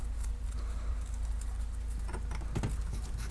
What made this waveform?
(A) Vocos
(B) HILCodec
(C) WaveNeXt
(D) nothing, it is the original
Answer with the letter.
D